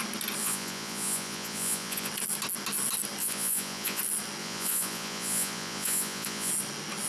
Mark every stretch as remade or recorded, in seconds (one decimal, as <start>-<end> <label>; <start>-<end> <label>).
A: 0.0-0.4 recorded; 0.4-2.1 remade; 2.1-3.2 recorded; 3.2-4.0 remade; 4.0-4.4 recorded; 4.4-6.5 remade; 6.5-7.1 recorded